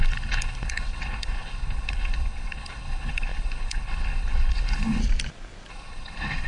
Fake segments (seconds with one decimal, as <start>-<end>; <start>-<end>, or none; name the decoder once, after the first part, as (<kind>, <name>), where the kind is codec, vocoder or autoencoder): 0.0-5.0 (codec, HILCodec); 5.7-6.5

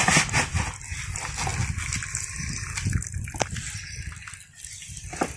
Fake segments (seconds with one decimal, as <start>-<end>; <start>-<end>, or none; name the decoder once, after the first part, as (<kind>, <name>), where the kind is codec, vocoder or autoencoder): none

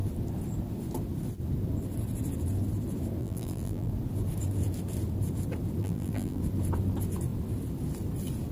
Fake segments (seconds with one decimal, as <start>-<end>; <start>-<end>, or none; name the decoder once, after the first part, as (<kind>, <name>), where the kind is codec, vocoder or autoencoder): 3.2-3.9 (vocoder, BigVGAN v2); 5.8-6.4

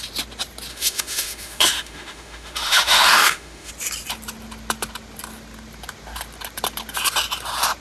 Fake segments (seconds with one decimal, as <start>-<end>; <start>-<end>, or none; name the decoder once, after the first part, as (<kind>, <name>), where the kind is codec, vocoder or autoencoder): 0.7-3.7 (autoencoder, DAC-VAE)

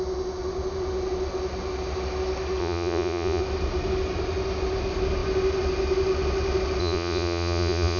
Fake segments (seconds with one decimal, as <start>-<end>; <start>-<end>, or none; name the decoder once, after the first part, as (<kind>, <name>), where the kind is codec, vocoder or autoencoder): 2.6-3.4 (vocoder, Vocos); 6.8-8.0

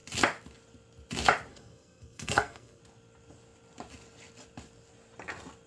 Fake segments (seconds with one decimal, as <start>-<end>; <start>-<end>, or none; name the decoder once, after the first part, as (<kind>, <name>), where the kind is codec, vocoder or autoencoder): 1.5-2.8 (codec, SNAC)

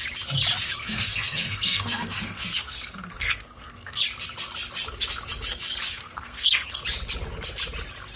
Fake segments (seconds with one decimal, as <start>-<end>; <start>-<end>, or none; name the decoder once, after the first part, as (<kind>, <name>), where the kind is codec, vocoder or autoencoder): 0.8-4.0 (codec, SNAC); 5.9-6.8

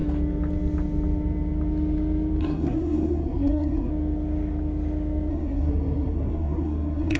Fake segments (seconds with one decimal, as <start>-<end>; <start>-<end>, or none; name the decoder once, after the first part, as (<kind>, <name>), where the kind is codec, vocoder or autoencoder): 2.4-3.9 (codec, SNAC); 5.3-7.2